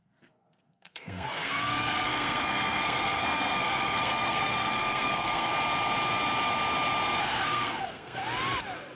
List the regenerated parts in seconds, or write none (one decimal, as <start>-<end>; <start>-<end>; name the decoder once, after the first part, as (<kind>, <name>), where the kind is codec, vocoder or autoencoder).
0.0-5.5 (codec, SNAC); 7.2-8.2